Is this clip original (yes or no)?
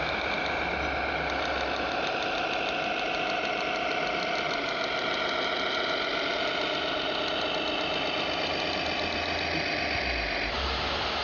yes